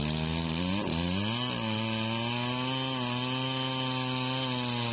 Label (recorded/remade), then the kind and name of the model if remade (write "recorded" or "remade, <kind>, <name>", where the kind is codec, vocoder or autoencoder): recorded